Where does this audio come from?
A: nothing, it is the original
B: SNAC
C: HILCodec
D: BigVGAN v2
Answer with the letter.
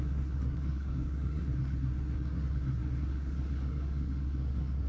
B